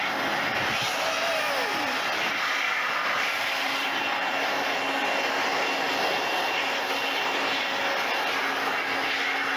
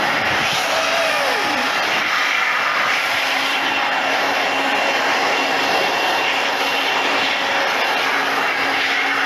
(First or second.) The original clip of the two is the first